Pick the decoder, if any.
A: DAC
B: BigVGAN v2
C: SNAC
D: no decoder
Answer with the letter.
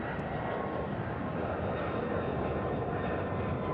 D